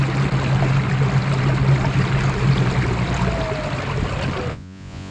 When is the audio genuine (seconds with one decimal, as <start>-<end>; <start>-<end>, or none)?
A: 0.0-4.5